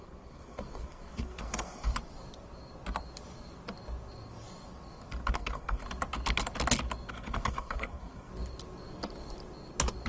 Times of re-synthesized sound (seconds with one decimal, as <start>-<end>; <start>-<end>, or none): 0.0-1.9; 5.3-5.8; 7.1-8.3